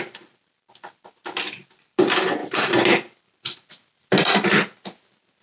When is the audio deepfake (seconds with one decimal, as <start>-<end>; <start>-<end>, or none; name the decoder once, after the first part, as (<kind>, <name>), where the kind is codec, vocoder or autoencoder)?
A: none